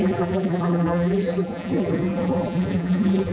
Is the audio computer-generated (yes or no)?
yes